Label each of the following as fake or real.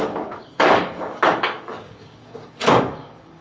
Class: fake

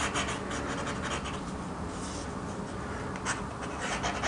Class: real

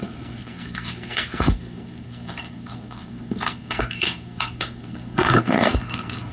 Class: fake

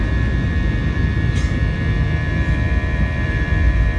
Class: fake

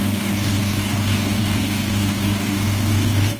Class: fake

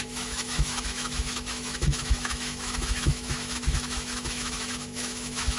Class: fake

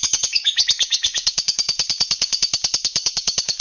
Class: fake